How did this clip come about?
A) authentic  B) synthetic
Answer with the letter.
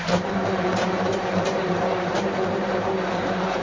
B